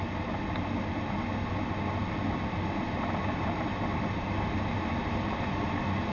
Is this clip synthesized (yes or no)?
no